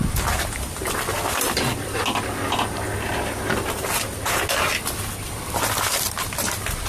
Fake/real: real